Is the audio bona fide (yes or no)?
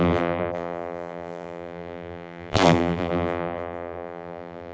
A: no